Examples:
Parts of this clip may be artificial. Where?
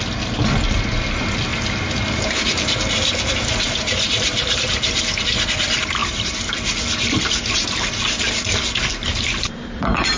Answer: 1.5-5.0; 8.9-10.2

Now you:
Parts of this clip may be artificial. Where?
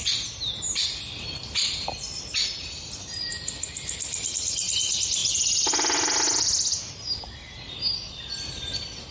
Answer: 1.4-2.2; 5.2-7.7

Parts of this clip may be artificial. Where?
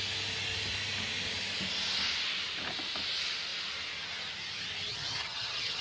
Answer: 4.9-5.8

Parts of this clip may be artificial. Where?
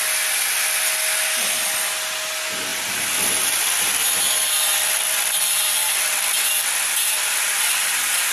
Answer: 2.7-6.0; 7.0-7.9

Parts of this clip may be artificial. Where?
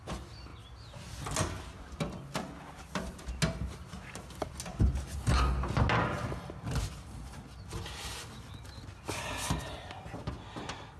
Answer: none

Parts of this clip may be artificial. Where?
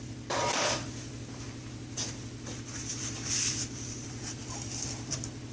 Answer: none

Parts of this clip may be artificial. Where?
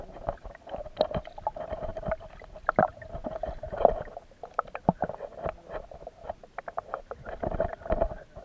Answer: none